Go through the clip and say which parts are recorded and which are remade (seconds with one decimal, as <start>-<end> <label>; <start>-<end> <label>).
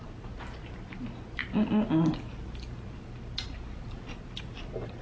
0.0-5.0 recorded